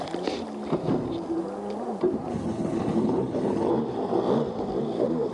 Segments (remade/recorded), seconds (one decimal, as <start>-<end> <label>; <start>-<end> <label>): 0.0-2.3 recorded; 2.3-3.7 remade; 3.7-5.3 recorded